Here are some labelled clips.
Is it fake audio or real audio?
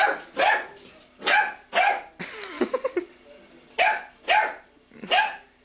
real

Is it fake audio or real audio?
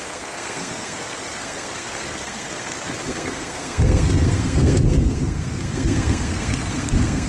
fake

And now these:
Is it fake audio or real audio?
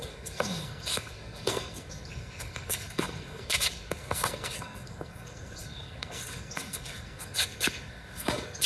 fake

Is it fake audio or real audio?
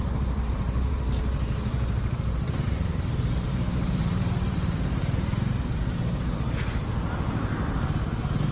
fake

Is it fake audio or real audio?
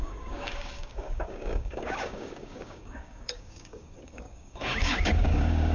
fake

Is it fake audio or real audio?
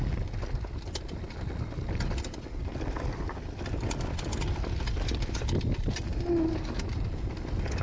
real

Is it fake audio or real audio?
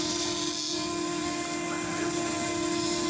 real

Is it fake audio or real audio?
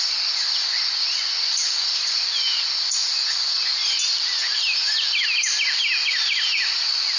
real